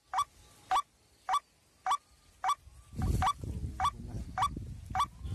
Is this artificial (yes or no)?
no